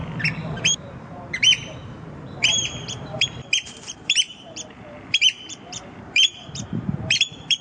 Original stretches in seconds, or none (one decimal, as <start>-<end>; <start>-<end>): 0.0-0.5